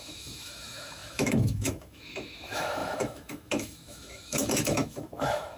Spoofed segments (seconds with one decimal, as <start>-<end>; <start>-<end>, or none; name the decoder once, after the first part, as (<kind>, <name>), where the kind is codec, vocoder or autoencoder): 0.0-5.6 (autoencoder, DAC-VAE)

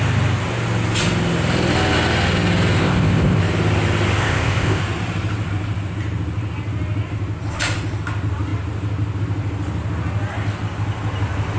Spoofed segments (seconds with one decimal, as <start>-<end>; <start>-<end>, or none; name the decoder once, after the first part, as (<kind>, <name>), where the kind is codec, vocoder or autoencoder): 2.8-3.4 (codec, ZipCodec); 4.2-4.8

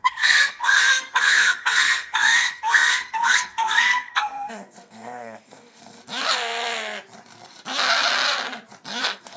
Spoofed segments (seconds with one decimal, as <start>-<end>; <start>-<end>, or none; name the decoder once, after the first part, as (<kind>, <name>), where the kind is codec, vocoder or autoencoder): 0.0-6.0 (codec, SNAC); 9.0-9.4

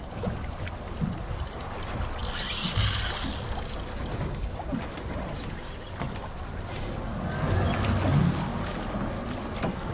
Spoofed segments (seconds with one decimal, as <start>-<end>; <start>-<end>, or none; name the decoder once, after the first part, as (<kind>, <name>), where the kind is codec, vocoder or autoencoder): none

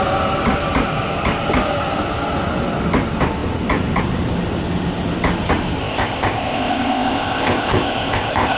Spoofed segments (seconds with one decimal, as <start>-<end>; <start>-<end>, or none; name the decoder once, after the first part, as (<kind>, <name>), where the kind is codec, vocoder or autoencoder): 5.8-8.6 (codec, ZipCodec)

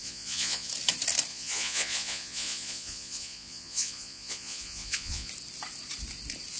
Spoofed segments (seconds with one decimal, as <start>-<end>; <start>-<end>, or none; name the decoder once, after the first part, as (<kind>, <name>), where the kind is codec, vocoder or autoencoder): 0.0-0.7 (vocoder, Vocos); 1.3-5.3

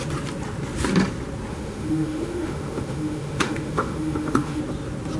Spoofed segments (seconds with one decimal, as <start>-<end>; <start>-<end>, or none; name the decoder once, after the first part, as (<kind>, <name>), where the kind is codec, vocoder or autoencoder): 1.5-4.6 (autoencoder, DAC-VAE)

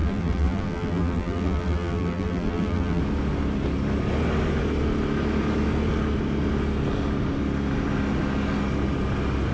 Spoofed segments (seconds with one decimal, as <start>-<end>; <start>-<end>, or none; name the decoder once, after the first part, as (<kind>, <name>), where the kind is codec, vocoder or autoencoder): 0.0-3.0 (vocoder, BigVGAN v2)